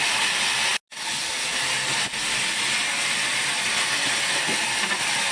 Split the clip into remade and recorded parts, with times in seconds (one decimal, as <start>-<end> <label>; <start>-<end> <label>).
0.0-5.3 recorded